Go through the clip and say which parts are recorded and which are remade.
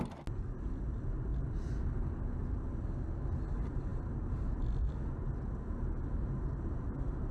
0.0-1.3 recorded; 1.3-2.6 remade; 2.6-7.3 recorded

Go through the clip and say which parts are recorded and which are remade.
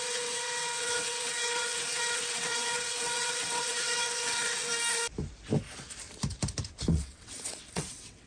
0.0-4.7 remade; 4.7-6.9 recorded; 6.9-8.3 remade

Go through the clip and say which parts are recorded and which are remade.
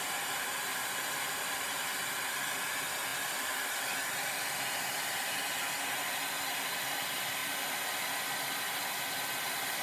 0.0-9.8 recorded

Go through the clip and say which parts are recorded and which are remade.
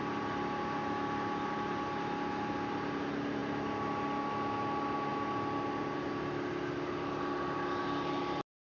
0.0-8.6 recorded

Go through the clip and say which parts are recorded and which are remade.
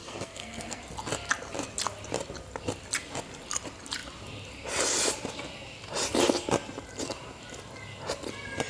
0.0-0.8 remade; 0.8-8.7 recorded